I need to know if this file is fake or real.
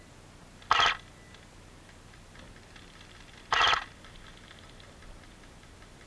real